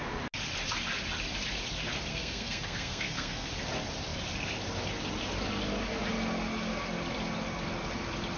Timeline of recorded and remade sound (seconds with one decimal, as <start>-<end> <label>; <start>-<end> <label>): 0.0-2.1 recorded; 2.1-3.5 remade; 3.5-8.4 recorded